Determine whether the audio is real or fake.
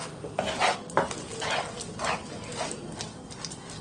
real